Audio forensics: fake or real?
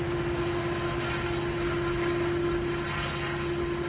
real